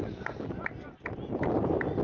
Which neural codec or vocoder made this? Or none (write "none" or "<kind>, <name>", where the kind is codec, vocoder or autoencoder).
none